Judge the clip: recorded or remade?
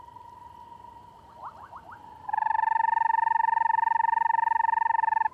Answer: recorded